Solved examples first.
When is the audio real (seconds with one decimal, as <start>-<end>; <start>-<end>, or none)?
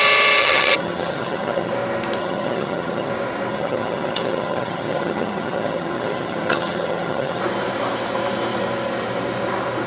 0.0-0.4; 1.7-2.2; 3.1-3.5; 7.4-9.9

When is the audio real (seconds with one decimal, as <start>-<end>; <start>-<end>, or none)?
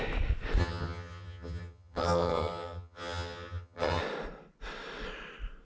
0.0-0.6; 4.0-5.6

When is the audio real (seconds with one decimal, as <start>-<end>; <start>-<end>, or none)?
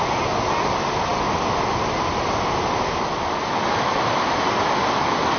0.0-5.4